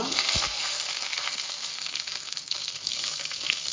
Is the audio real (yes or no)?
no